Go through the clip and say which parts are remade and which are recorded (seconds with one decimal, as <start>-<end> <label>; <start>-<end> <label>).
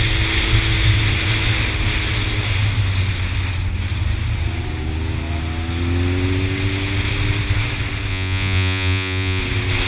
0.0-8.1 recorded; 8.1-9.4 remade; 9.4-9.9 recorded